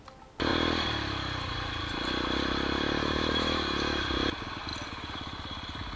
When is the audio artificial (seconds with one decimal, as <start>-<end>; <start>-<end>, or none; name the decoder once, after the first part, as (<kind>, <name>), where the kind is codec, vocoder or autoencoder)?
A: 3.0-4.0 (autoencoder, DAC-VAE)